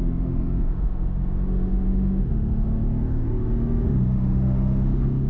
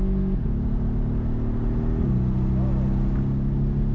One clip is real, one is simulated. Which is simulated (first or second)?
first